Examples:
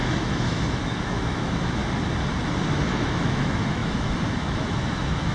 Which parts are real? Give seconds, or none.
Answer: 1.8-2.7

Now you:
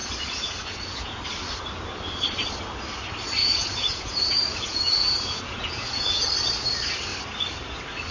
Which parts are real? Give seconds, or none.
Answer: 1.2-3.4; 6.1-8.1